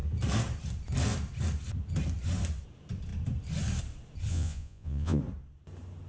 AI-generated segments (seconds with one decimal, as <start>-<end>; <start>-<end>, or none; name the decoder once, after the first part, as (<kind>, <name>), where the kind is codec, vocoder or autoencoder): 4.3-5.2 (vocoder, Vocos)